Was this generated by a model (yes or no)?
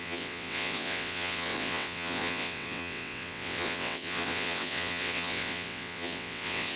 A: yes